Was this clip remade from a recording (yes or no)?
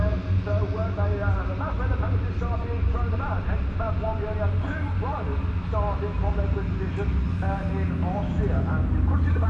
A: no